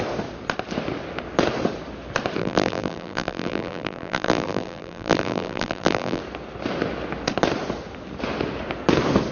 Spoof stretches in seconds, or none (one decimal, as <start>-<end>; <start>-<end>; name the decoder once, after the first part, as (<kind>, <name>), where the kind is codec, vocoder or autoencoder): 2.4-6.2 (vocoder, BigVGAN v2)

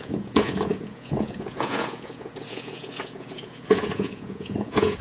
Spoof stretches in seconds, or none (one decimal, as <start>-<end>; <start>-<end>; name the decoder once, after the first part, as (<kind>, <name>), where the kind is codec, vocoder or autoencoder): 0.0-5.0 (vocoder, Vocos)

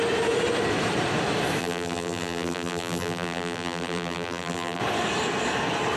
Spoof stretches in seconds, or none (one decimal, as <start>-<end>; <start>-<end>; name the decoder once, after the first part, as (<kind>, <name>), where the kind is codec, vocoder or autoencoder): 1.6-4.8 (vocoder, BigVGAN v2)

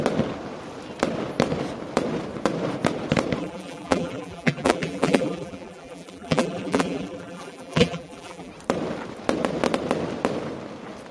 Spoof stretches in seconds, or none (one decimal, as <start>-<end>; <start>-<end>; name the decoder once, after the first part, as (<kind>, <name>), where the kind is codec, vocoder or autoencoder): 3.4-8.5 (vocoder, BigVGAN v2)

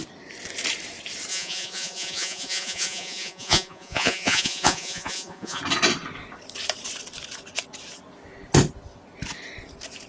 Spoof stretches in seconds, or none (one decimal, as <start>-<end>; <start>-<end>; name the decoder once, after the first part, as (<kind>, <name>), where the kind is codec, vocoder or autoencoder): 1.3-5.6 (vocoder, Vocos)

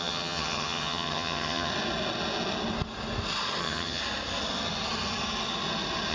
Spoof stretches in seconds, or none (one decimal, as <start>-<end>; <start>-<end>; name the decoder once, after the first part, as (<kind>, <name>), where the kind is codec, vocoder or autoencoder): 0.0-1.7 (vocoder, HiFi-GAN); 3.6-4.0